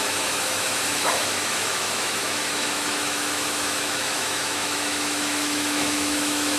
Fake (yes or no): yes